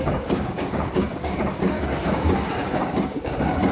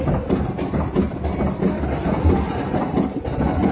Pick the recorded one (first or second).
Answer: second